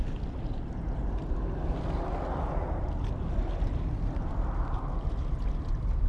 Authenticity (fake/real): real